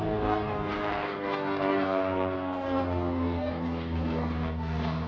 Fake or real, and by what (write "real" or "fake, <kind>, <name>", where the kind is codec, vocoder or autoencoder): fake, codec, DAC